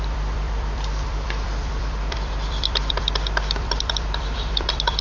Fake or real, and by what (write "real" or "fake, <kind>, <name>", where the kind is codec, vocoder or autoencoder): fake, vocoder, BigVGAN v2